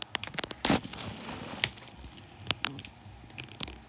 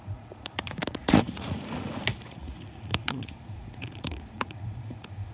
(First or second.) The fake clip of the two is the second